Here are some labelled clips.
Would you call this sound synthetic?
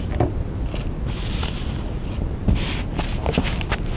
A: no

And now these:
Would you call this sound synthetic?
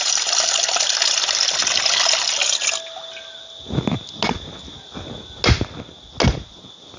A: no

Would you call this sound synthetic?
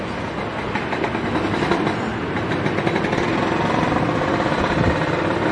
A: no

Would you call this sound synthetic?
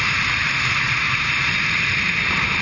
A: yes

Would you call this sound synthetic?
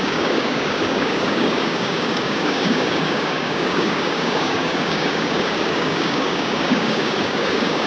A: yes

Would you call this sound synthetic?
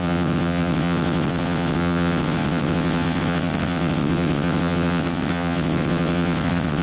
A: yes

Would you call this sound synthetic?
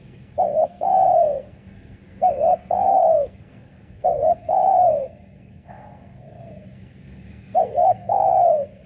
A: yes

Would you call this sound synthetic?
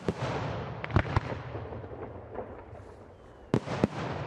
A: no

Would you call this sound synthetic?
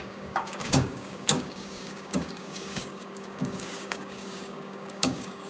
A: yes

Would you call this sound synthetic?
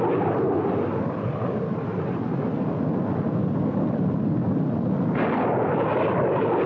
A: no